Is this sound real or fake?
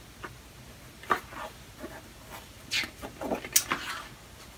real